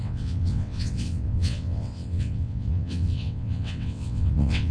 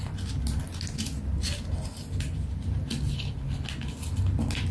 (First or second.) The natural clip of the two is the second